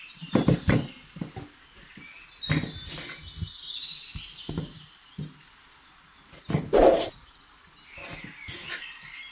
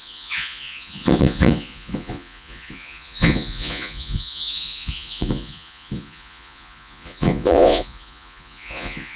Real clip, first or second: first